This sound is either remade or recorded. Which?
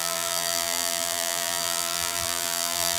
remade